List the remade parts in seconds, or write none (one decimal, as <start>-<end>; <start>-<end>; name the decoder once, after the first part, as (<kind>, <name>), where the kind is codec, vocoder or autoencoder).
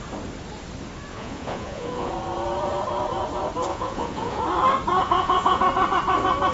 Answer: 1.1-2.1 (vocoder, Vocos); 3.7-4.4; 5.0-5.6